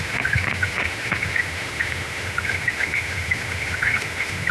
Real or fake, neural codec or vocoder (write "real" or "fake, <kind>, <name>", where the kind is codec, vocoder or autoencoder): fake, autoencoder, DAC-VAE